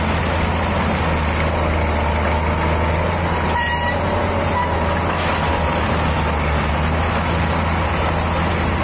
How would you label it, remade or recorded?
recorded